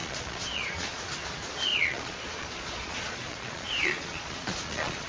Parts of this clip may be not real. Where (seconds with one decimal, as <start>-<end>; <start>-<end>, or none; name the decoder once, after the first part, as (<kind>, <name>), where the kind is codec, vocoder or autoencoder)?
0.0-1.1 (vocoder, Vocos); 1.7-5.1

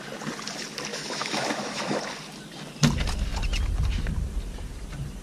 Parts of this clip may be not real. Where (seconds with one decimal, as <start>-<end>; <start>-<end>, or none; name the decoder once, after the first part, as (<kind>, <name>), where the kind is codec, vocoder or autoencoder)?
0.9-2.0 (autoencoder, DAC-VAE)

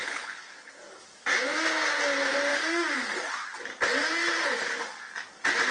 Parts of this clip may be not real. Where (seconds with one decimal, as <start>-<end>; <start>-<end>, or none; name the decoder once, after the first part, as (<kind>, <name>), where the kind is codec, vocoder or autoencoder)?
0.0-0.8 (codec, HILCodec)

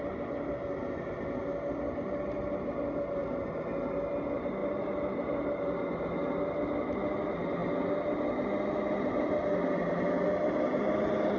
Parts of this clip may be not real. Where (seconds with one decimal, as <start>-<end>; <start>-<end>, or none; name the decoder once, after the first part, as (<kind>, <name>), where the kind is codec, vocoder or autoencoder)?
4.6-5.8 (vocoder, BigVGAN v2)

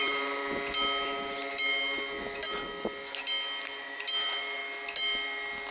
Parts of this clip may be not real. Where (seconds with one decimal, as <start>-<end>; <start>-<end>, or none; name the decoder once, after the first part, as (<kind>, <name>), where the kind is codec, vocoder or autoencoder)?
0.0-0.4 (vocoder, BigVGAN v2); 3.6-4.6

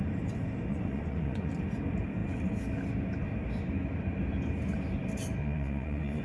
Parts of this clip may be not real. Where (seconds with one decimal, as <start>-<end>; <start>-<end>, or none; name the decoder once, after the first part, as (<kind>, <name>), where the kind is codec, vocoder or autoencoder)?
0.7-1.5 (vocoder, Vocos); 5.4-6.2